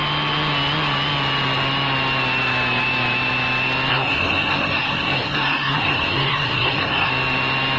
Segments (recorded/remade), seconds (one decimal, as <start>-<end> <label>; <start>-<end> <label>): 0.0-3.9 recorded; 3.9-7.1 remade; 7.1-7.8 recorded